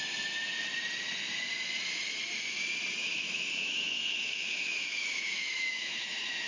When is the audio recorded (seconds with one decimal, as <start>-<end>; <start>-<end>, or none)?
0.0-3.0